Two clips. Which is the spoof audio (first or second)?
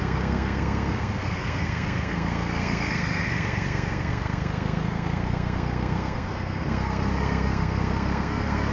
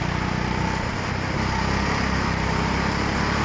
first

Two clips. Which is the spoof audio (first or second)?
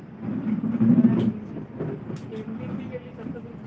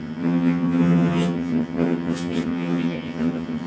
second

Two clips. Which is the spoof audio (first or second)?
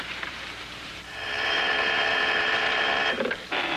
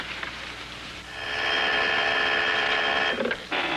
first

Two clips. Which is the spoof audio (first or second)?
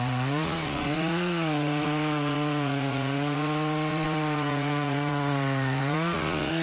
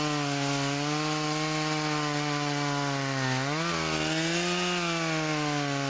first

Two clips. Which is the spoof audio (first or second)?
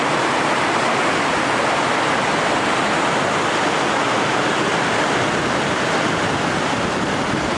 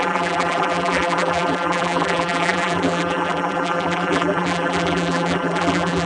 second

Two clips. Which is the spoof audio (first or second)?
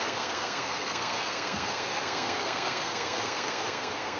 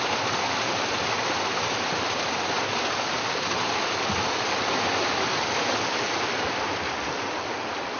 first